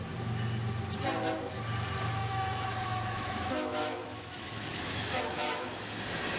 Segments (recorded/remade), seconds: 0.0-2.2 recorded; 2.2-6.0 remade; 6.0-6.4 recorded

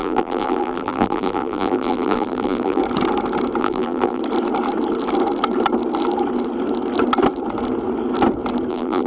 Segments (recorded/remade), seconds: 0.0-2.8 remade; 2.8-3.6 recorded; 3.6-4.2 remade; 4.2-8.7 recorded; 8.7-9.1 remade

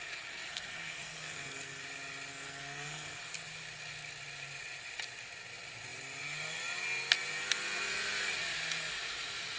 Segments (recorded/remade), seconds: 0.0-0.5 recorded; 0.5-1.8 remade; 1.8-2.3 recorded; 2.3-3.2 remade; 3.2-9.6 recorded

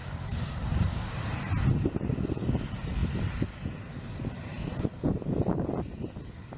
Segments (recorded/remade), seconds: 0.0-1.3 remade; 1.3-6.6 recorded

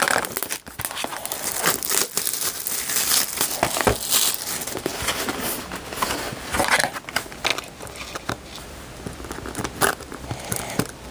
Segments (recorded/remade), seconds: 0.0-11.1 recorded

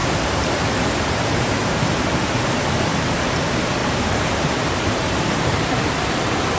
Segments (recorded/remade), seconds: 0.0-1.8 remade; 1.8-2.9 recorded; 2.9-3.4 remade; 3.4-3.8 recorded; 3.8-5.9 remade; 5.9-6.6 recorded

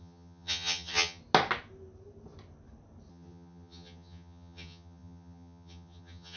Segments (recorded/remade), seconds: 0.0-1.2 remade; 1.2-3.1 recorded; 3.1-6.4 remade

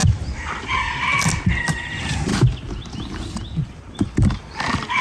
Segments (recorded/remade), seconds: 0.0-1.4 recorded; 1.4-2.3 remade; 2.3-5.0 recorded